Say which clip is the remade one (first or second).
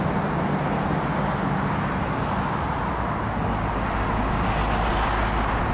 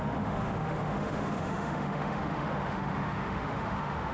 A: second